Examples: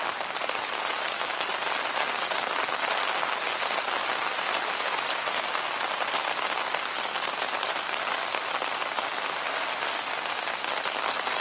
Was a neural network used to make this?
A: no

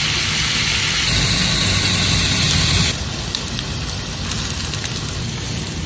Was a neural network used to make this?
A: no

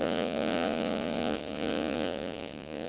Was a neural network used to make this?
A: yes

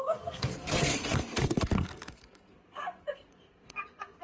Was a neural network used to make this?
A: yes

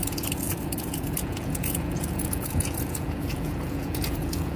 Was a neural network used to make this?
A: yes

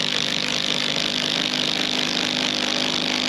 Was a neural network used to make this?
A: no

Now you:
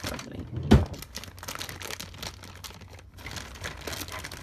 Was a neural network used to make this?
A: no